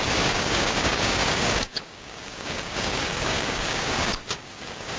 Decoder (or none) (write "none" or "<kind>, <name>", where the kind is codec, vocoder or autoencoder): codec, DAC